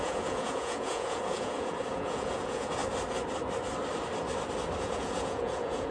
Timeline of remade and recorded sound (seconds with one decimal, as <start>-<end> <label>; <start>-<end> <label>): 0.0-2.8 remade; 2.8-4.8 recorded; 4.8-5.9 remade